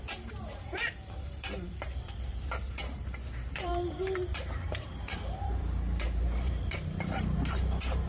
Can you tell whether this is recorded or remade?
remade